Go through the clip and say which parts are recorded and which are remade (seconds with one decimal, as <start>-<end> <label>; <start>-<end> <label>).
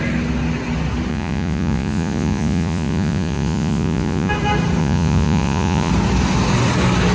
0.0-1.1 recorded; 1.1-4.3 remade; 4.3-4.8 recorded; 4.8-5.9 remade; 5.9-7.1 recorded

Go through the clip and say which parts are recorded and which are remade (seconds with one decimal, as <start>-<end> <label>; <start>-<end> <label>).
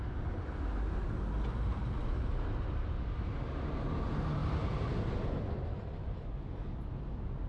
0.0-7.5 recorded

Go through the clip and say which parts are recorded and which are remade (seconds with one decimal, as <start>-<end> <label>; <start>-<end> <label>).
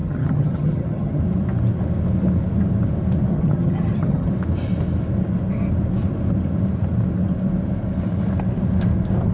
0.0-1.2 remade; 1.2-3.3 recorded; 3.3-4.3 remade; 4.3-9.3 recorded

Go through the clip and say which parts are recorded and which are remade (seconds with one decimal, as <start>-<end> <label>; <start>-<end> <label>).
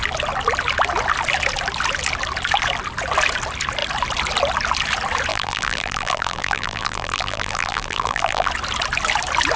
0.0-5.3 recorded; 5.3-8.5 remade; 8.5-9.6 recorded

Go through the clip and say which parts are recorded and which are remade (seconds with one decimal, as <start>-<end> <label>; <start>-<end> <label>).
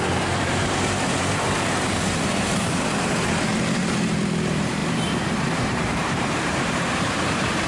0.0-7.7 remade